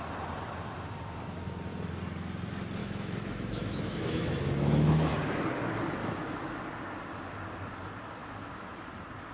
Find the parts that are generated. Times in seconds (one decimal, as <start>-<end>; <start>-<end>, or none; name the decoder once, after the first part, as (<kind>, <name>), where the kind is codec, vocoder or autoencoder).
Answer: 2.8-5.1 (autoencoder, DAC-VAE); 6.0-6.6; 8.2-8.9